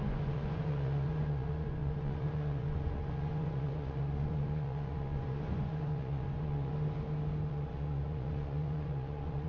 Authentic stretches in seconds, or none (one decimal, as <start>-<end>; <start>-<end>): 6.7-7.5